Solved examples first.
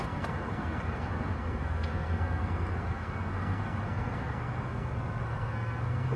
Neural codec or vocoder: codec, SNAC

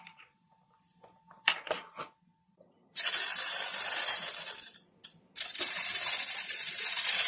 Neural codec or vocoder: none